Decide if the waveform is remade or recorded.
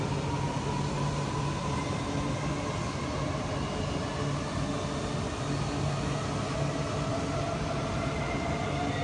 recorded